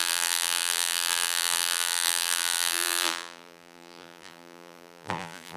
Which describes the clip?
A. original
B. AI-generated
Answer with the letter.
B